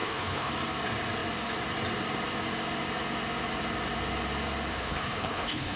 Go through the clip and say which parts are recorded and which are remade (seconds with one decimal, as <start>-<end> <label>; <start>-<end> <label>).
0.0-0.5 remade; 0.5-4.7 recorded; 4.7-5.8 remade